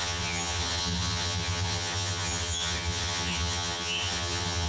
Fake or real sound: fake